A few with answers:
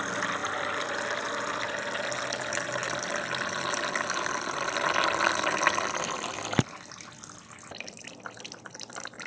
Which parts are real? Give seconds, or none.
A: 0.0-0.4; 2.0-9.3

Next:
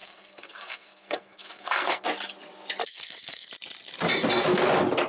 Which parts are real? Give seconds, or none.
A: 2.0-2.8; 3.5-5.1

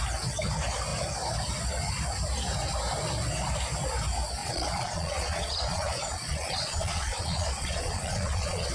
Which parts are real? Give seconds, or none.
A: 0.0-4.4

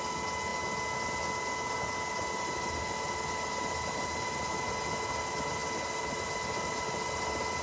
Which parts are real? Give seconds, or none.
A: 0.0-7.6

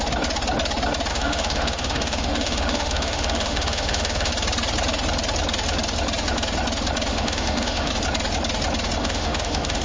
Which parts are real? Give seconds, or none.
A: 0.0-1.1; 4.3-7.1; 7.9-9.0